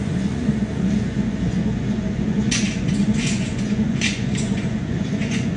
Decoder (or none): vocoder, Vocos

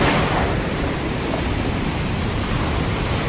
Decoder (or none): none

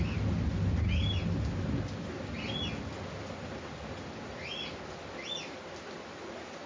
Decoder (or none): none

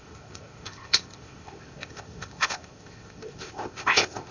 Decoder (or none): codec, ZipCodec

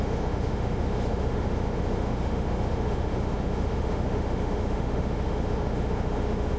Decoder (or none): autoencoder, DAC-VAE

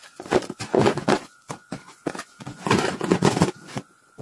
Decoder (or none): vocoder, Vocos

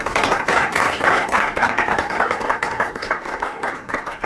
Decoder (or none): codec, SNAC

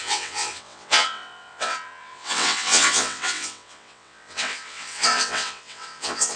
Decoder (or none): vocoder, WaveNeXt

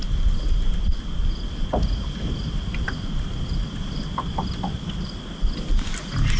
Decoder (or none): none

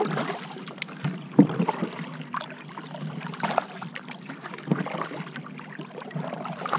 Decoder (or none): vocoder, BigVGAN v2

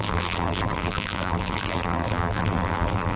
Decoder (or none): vocoder, BigVGAN v2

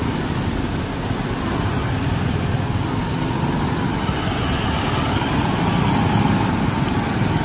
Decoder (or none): none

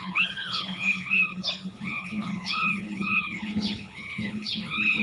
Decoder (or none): codec, HILCodec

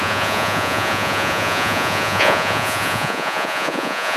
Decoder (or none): vocoder, Vocos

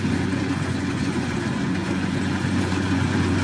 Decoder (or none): vocoder, Vocos